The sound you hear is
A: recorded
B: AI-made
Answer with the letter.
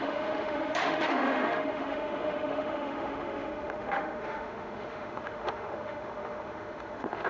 B